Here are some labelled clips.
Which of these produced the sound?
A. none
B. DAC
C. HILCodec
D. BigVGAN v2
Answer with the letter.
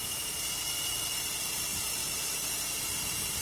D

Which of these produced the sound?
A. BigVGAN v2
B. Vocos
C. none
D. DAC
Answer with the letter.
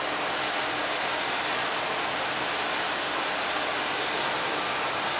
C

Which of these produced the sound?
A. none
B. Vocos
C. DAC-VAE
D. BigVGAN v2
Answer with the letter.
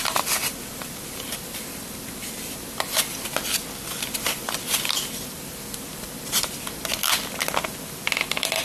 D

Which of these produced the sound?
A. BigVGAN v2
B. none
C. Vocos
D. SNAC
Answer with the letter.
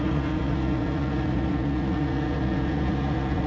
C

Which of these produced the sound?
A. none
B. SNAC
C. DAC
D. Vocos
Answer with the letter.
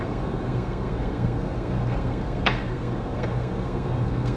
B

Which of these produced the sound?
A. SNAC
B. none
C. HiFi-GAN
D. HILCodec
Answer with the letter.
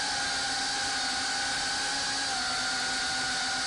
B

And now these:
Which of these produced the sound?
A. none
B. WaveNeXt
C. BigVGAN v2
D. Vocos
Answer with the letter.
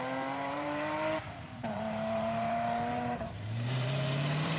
C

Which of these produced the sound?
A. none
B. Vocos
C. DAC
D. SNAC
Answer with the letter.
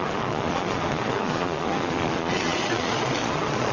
B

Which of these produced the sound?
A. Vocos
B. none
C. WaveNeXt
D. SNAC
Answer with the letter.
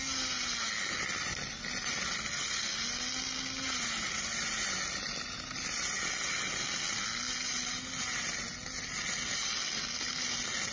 B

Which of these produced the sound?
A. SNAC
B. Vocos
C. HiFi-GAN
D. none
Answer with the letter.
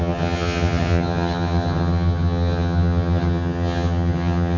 C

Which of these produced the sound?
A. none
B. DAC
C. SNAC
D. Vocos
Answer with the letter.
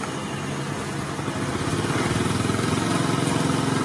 A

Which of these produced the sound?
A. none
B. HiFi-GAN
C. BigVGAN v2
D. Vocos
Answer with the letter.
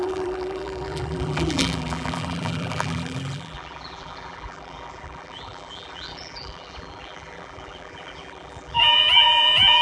C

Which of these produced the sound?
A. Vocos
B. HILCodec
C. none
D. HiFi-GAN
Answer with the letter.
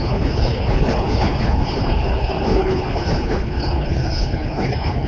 B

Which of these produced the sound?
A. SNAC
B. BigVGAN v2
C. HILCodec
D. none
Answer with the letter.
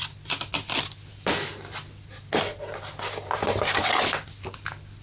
D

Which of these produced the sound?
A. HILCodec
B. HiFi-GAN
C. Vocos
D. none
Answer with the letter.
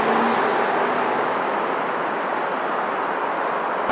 D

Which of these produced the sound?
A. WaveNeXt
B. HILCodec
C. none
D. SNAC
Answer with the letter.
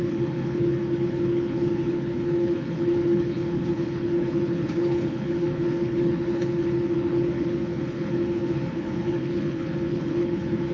B